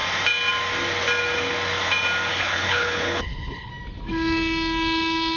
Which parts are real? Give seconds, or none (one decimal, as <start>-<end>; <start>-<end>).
0.0-2.3; 3.7-5.4